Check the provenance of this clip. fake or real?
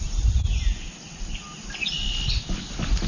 real